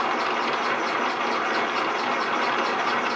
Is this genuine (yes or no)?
no